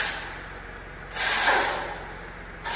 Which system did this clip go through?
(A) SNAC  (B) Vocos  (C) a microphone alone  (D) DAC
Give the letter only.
C